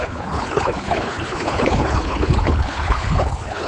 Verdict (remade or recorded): remade